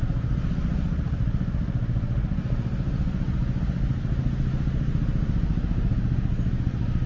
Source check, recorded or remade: recorded